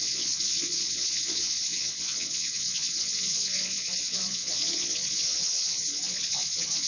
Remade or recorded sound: remade